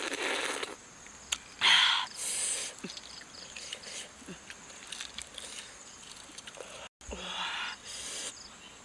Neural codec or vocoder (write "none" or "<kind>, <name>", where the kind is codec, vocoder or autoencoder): none